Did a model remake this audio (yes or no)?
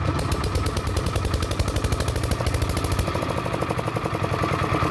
no